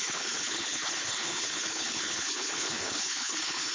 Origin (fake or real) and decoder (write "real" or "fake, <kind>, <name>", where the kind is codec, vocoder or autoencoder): fake, codec, HILCodec